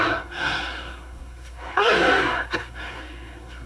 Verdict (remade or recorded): remade